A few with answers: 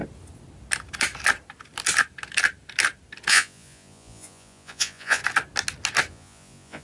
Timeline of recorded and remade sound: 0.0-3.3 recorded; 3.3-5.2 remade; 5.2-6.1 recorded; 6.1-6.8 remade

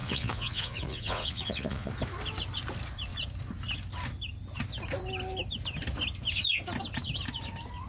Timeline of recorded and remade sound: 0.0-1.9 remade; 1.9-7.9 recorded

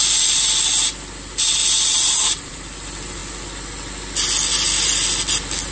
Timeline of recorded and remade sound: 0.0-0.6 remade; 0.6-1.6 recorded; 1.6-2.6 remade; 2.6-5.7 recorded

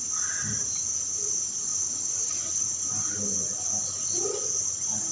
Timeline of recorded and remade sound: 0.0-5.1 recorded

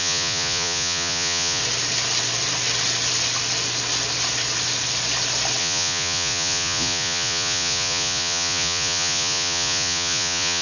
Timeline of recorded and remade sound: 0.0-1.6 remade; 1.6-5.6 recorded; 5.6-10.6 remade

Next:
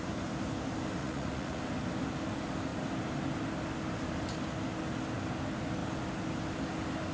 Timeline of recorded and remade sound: 0.0-1.0 recorded; 1.0-1.6 remade; 1.6-7.1 recorded

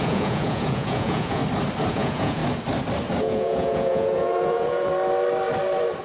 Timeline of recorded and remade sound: 0.0-1.4 remade; 1.4-1.9 recorded; 1.9-2.4 remade; 2.4-3.2 recorded; 3.2-4.9 remade; 4.9-6.0 recorded